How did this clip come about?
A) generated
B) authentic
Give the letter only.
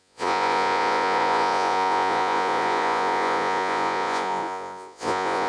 A